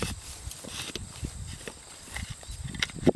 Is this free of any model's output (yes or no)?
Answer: yes